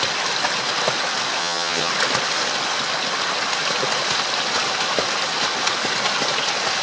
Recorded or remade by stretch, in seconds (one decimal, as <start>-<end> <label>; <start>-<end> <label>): 0.0-1.4 recorded; 1.4-1.9 remade; 1.9-6.8 recorded